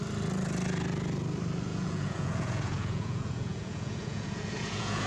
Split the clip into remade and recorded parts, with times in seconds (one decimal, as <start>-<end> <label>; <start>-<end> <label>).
0.0-1.7 recorded; 1.7-5.1 remade